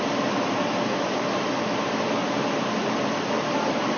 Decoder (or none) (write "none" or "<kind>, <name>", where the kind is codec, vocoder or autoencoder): none